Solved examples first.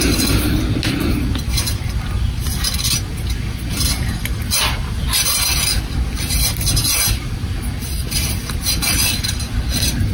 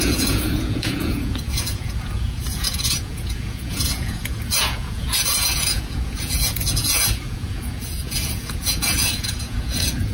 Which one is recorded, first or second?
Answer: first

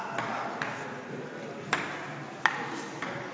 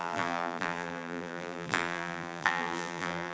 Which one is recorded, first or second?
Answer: first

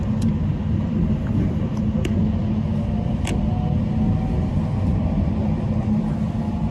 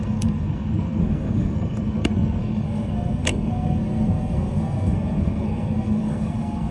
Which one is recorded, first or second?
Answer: first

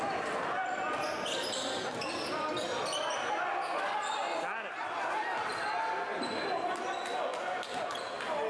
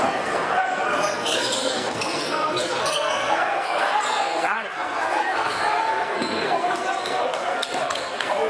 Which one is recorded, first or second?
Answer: first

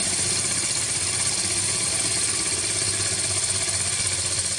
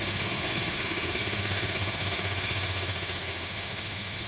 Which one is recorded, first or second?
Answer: first